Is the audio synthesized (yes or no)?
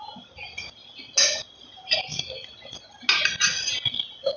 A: no